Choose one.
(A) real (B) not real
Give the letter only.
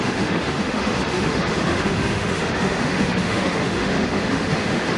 B